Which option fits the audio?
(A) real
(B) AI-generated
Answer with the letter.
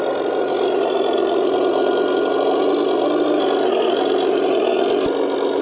A